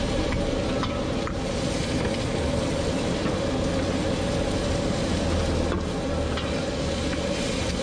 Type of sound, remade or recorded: recorded